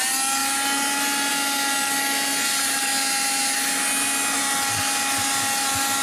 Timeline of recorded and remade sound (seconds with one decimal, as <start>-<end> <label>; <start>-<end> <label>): 0.0-6.0 recorded